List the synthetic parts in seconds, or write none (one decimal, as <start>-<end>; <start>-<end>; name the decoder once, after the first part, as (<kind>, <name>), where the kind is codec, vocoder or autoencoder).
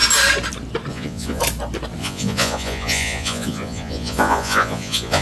0.9-1.4 (vocoder, Vocos); 2.0-5.2